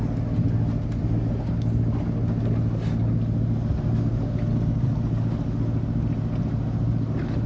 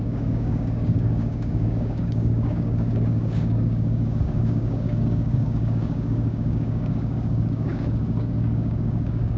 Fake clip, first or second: second